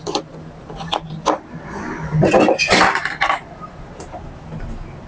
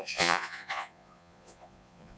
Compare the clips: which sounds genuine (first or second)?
first